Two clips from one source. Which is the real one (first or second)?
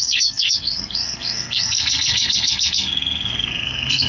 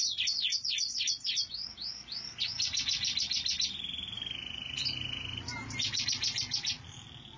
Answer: second